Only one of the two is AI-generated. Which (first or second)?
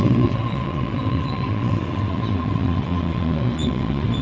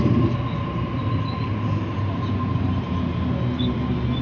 first